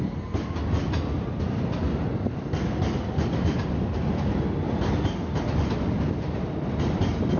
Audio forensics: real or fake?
real